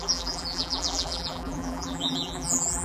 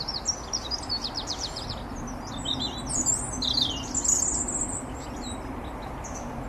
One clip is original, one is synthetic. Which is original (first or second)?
second